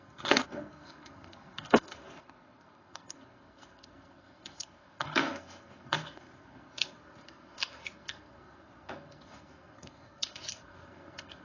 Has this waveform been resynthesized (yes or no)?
yes